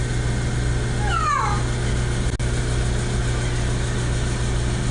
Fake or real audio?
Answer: real